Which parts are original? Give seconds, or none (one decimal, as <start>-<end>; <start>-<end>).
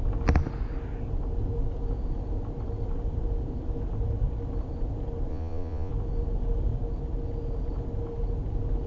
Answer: 0.0-5.3; 5.9-8.9